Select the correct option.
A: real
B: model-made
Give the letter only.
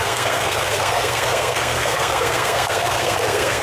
B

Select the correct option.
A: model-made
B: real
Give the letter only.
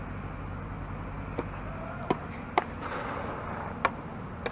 B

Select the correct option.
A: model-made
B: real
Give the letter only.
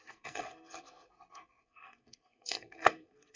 A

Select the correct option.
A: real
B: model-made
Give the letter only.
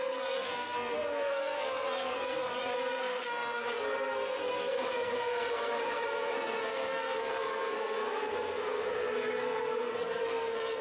B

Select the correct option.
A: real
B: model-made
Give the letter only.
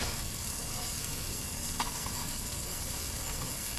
B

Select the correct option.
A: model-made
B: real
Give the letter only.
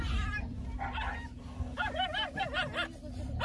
B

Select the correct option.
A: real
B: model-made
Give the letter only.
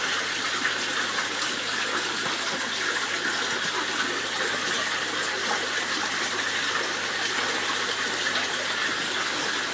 A